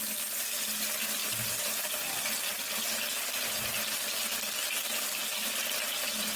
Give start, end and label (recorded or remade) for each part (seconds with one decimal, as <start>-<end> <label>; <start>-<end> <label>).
0.0-6.4 recorded